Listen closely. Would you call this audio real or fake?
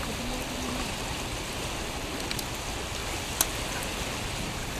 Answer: real